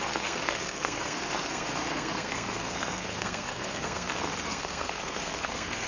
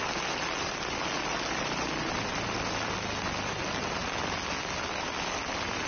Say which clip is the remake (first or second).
first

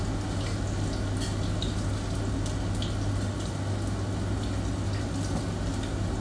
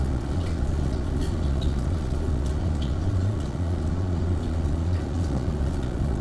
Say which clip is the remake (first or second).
second